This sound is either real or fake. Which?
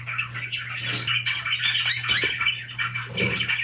real